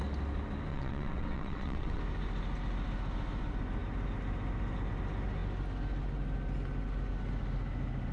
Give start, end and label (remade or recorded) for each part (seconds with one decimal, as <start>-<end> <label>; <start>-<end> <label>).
0.0-0.7 recorded; 0.7-2.0 remade; 2.0-8.1 recorded

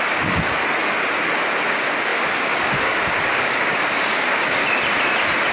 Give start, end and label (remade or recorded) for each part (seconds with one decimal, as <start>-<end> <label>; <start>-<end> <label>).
0.0-0.6 remade; 0.6-1.7 recorded; 1.7-4.6 remade; 4.6-5.5 recorded

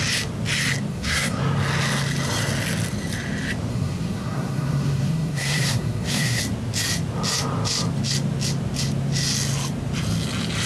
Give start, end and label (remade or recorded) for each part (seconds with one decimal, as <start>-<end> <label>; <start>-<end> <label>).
0.0-0.9 recorded; 0.9-1.4 remade; 1.4-3.7 recorded; 3.7-6.4 remade; 6.4-10.7 recorded

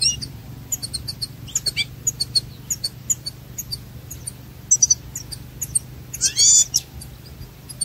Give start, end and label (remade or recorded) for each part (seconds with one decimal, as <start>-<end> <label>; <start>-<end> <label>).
0.0-7.8 recorded

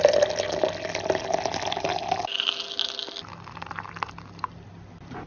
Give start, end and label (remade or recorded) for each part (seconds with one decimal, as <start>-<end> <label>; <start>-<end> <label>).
0.0-5.3 recorded